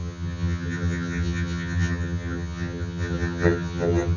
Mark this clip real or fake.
fake